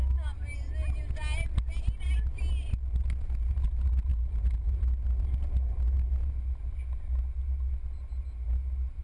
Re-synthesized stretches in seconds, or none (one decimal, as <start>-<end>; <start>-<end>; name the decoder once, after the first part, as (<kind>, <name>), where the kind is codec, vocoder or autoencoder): none